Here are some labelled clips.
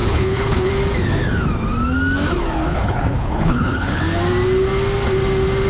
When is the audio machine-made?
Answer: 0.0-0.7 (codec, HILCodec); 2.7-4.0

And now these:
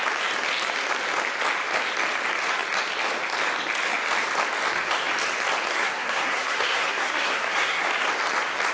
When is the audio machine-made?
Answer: 5.7-7.9 (codec, SNAC)

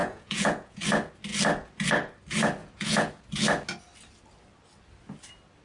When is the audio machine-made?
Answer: 0.0-0.8 (vocoder, Vocos); 2.6-3.1

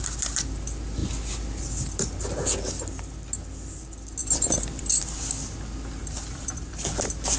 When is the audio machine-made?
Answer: 4.2-5.0 (vocoder, BigVGAN v2); 6.0-6.8

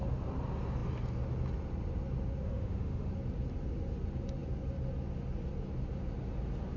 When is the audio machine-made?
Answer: 2.4-3.1 (autoencoder, DAC-VAE)